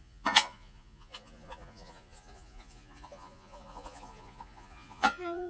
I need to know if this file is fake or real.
fake